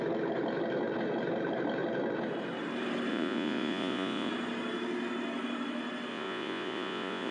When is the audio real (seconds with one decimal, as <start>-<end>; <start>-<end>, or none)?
0.0-3.1; 4.3-6.1